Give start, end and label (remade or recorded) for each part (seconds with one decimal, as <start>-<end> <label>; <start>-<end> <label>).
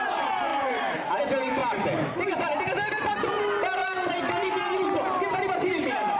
0.0-3.8 remade; 3.8-5.3 recorded; 5.3-6.2 remade